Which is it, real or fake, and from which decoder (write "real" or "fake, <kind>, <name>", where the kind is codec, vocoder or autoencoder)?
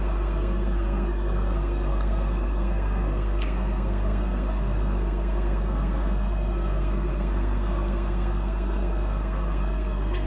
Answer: fake, codec, SNAC